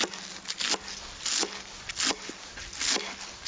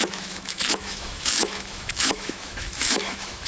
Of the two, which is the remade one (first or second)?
second